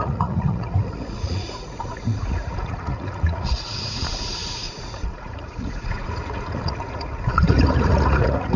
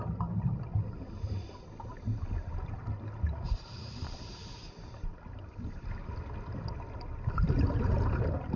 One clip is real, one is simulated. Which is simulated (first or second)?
first